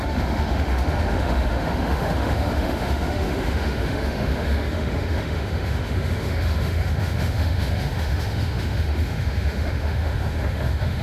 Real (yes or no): no